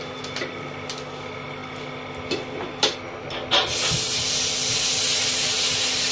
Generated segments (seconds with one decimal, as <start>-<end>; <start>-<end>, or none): none